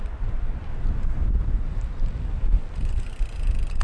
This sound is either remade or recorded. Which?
remade